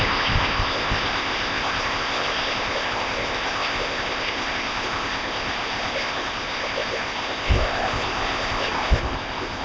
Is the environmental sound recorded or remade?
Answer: remade